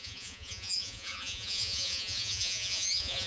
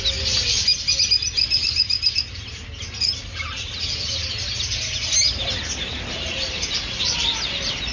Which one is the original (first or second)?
second